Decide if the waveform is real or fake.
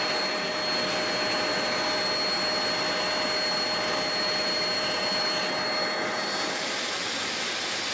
real